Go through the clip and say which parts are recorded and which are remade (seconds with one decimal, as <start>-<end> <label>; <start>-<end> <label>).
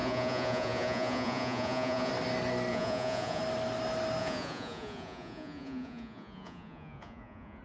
0.0-2.1 remade; 2.1-2.7 recorded; 2.7-3.4 remade; 3.4-4.2 recorded; 4.2-7.6 remade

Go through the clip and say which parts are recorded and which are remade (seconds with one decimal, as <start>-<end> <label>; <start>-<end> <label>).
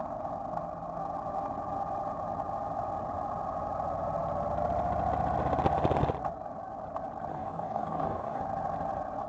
0.0-7.3 recorded; 7.3-8.4 remade; 8.4-9.3 recorded